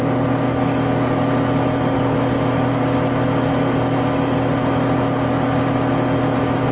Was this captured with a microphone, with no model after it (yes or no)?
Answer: yes